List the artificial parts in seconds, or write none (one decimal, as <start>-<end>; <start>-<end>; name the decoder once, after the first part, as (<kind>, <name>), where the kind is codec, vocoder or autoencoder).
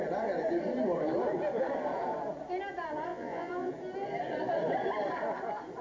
3.1-3.7 (vocoder, Vocos)